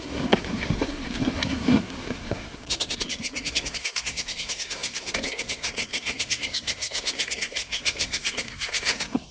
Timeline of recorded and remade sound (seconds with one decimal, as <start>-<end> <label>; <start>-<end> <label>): 0.0-9.3 remade